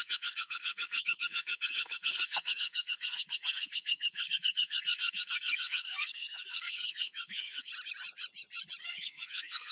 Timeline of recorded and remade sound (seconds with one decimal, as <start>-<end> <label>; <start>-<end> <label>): 0.0-7.7 remade; 7.7-8.8 recorded; 8.8-9.7 remade